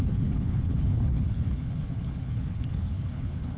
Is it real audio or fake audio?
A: fake